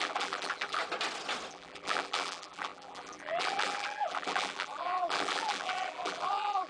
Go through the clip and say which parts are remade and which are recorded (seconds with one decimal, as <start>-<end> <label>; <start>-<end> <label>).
0.0-0.8 remade; 0.8-1.5 recorded; 1.5-6.7 remade